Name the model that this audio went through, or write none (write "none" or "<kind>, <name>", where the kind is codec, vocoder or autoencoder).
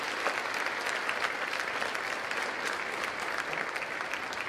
none